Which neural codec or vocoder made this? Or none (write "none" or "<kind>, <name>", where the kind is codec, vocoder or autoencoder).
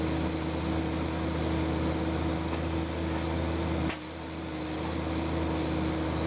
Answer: none